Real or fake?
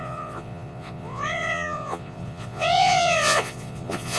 fake